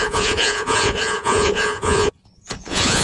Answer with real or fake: fake